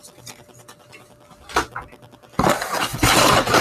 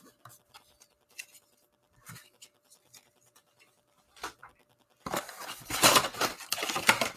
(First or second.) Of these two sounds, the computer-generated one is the second